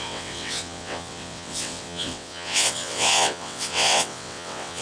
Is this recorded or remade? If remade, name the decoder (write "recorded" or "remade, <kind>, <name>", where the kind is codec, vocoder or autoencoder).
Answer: remade, vocoder, WaveNeXt